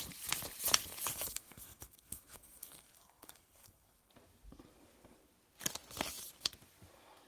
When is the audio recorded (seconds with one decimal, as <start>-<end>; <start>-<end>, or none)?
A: 0.0-1.1; 4.1-7.3